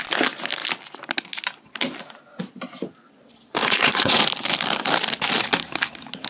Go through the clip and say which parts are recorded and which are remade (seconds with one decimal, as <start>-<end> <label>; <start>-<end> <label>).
0.0-3.6 recorded; 3.6-4.2 remade; 4.2-6.3 recorded